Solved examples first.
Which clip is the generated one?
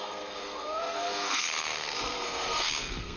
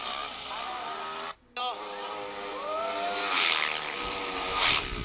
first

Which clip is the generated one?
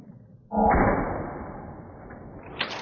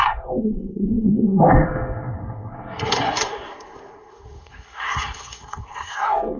second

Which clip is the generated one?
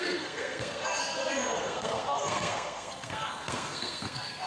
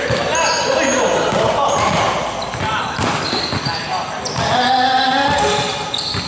first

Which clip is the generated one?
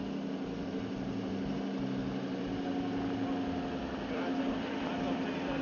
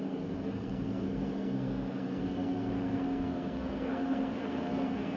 second